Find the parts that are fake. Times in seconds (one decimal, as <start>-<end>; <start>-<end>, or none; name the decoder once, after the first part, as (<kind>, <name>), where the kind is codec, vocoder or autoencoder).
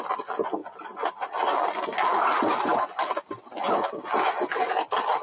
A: none